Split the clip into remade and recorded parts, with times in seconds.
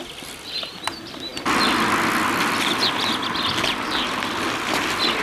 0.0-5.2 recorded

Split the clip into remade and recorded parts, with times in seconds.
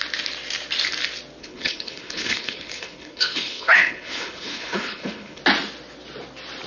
0.0-1.4 recorded; 1.4-5.4 remade; 5.4-6.7 recorded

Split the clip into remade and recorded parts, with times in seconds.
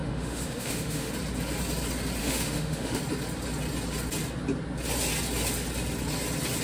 0.0-1.1 remade; 1.1-2.2 recorded; 2.2-3.0 remade; 3.0-6.6 recorded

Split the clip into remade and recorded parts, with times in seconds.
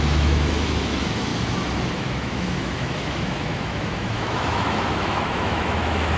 0.0-1.3 remade; 1.3-1.9 recorded; 1.9-6.2 remade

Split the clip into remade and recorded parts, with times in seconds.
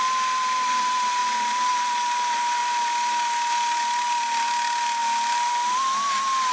0.0-6.5 recorded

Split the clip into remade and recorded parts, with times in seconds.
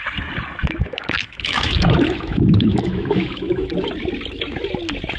0.0-0.6 recorded; 0.6-3.7 remade; 3.7-5.2 recorded